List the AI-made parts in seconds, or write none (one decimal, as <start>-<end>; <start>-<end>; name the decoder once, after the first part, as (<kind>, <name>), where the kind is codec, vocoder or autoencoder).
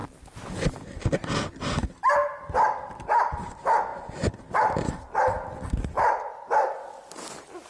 none